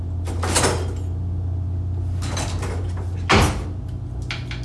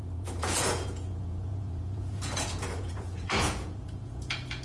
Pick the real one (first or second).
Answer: first